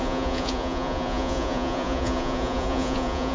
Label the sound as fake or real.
fake